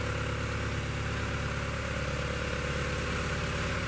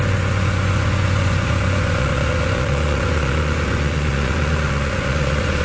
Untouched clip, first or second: first